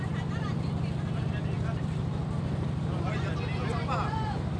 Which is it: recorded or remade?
recorded